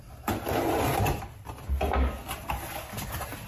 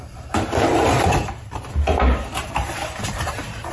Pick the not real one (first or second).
second